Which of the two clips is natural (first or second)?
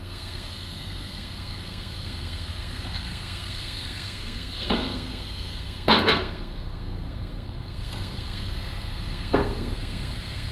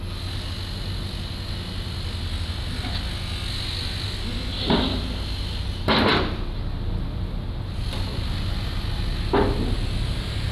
second